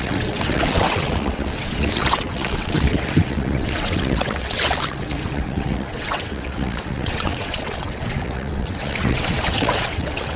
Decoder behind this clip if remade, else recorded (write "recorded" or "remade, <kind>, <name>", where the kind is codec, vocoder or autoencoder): remade, vocoder, WaveNeXt